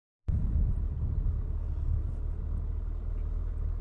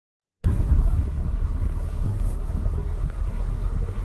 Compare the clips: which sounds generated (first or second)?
second